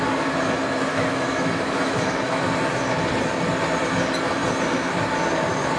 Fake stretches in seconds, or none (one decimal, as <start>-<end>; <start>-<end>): 0.9-2.4